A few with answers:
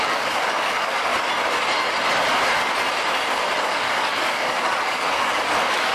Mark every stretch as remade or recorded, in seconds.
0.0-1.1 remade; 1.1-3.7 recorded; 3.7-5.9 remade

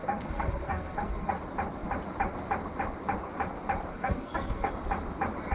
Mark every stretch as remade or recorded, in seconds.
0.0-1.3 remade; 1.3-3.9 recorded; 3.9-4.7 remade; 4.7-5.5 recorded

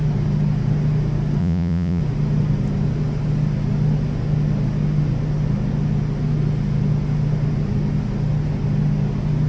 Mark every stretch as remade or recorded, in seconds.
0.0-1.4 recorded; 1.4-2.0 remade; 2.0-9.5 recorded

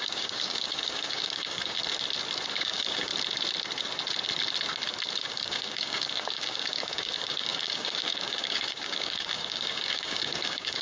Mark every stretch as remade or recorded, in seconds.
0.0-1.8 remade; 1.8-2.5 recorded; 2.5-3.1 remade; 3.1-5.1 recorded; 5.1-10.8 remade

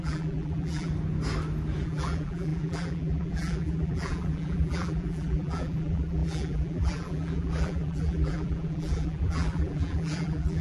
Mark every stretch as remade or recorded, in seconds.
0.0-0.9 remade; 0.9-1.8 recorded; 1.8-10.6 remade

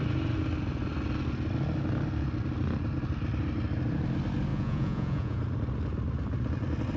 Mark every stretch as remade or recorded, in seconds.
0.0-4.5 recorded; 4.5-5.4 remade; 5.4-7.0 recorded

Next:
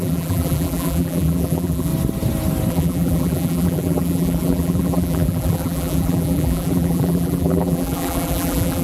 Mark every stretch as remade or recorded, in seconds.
0.0-1.9 remade; 1.9-2.7 recorded; 2.7-8.8 remade

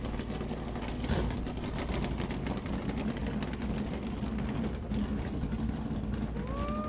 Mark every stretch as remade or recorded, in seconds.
0.0-6.9 recorded